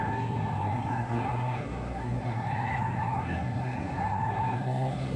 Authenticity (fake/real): fake